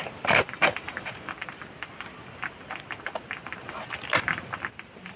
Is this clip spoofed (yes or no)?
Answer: no